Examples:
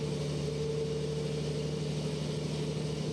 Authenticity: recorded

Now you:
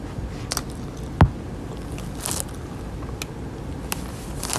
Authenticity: recorded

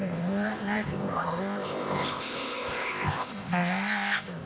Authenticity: remade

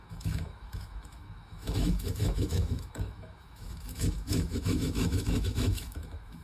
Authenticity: remade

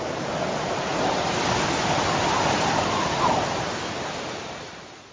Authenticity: recorded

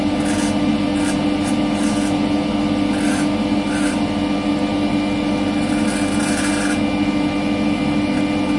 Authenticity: recorded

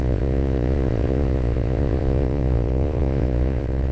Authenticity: remade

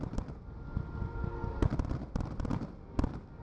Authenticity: recorded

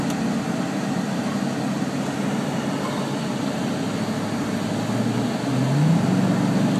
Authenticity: recorded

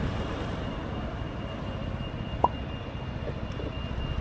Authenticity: recorded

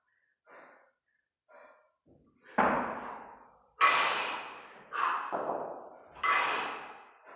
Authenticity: recorded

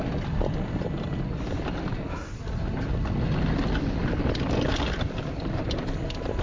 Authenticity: recorded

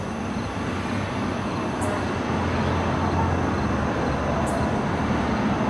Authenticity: recorded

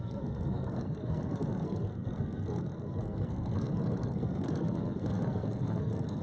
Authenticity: remade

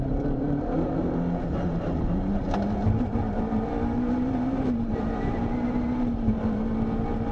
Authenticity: remade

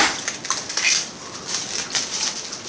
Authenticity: recorded